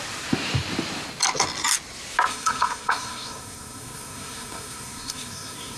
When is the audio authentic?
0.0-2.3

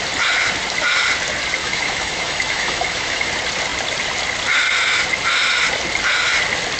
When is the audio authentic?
0.0-1.6; 3.3-6.8

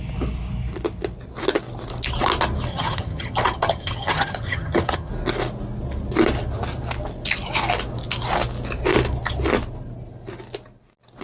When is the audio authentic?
0.0-2.7; 5.1-11.2

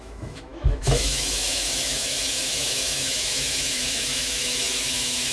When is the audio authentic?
none

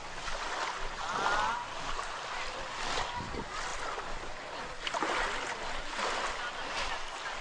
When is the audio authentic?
0.0-7.4

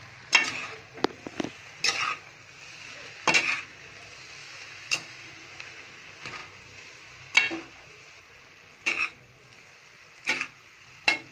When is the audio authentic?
0.0-4.4; 5.3-11.3

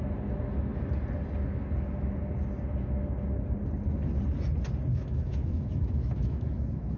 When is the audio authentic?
0.0-4.9

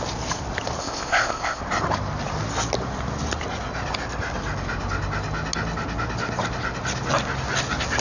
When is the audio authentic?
0.0-0.8; 1.6-8.0